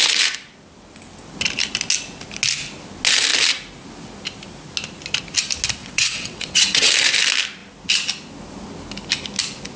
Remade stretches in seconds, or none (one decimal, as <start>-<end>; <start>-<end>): 5.8-6.9